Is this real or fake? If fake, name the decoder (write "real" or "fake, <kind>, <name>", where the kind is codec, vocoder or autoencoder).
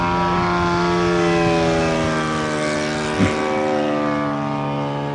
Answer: real